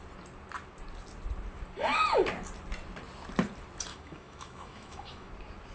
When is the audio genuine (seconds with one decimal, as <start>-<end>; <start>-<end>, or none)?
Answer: 0.0-3.9; 5.3-5.7